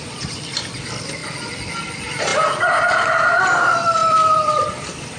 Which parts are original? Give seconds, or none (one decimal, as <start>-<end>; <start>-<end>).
1.2-1.8; 2.3-3.4